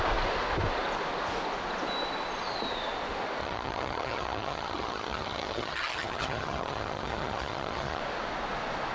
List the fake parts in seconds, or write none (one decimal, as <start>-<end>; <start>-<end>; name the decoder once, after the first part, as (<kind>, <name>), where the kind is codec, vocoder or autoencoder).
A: 3.4-8.0 (vocoder, HiFi-GAN)